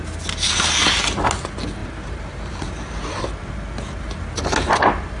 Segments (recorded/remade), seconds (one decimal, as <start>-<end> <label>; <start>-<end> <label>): 0.0-1.8 recorded; 1.8-2.7 remade; 2.7-5.2 recorded

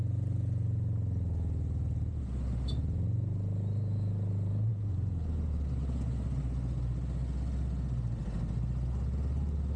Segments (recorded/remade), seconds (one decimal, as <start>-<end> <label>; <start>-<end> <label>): 0.0-4.7 recorded; 4.7-5.3 remade; 5.3-9.8 recorded

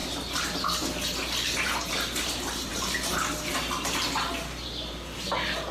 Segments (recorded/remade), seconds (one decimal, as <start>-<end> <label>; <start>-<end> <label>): 0.0-5.7 recorded

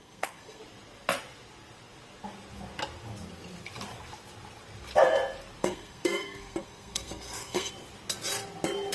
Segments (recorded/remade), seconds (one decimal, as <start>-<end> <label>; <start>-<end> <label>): 0.0-0.6 remade; 0.6-5.6 recorded; 5.6-7.7 remade; 7.7-8.9 recorded

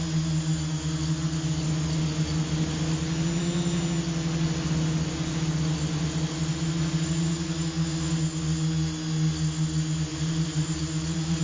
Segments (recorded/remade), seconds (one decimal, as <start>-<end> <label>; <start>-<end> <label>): 0.0-10.1 recorded; 10.1-11.4 remade

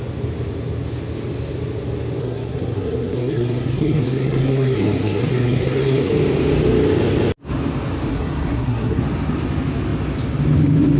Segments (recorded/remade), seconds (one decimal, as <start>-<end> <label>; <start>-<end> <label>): 0.0-2.2 recorded; 2.2-6.1 remade; 6.1-8.1 recorded; 8.1-9.0 remade; 9.0-11.0 recorded

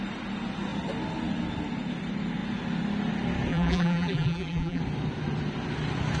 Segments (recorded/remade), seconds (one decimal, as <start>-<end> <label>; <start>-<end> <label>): 0.0-3.5 recorded; 3.5-4.8 remade; 4.8-6.2 recorded